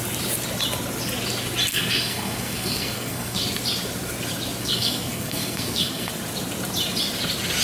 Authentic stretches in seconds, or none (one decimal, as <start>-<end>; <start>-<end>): 0.0-1.7; 3.4-4.6; 6.1-7.6